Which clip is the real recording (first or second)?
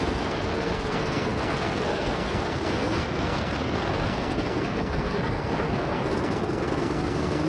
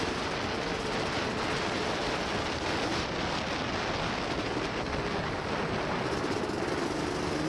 second